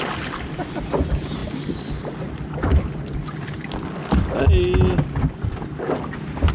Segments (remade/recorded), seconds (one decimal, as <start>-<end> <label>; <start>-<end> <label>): 0.0-6.5 recorded